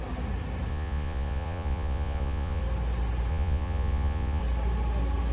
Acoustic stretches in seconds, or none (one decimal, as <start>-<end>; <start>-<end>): 0.0-0.7; 2.6-3.3; 4.4-5.3